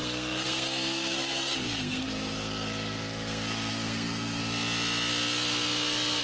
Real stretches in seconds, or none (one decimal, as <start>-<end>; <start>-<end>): 4.4-6.2